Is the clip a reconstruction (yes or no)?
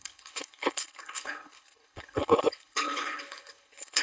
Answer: yes